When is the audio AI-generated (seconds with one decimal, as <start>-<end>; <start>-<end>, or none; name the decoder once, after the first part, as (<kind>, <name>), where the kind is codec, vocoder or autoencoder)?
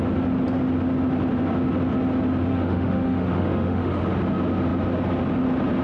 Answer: 2.5-4.0 (autoencoder, DAC-VAE)